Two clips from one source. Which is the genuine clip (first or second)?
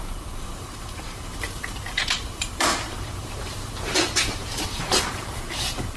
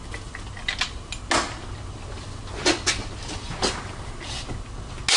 second